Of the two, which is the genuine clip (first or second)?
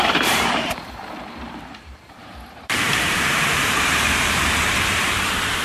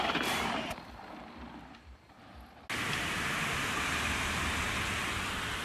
second